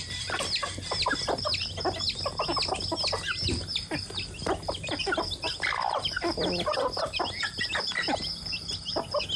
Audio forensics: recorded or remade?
recorded